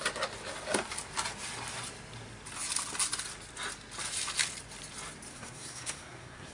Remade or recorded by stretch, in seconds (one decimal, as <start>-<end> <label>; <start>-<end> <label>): 0.0-5.3 recorded; 5.3-6.5 remade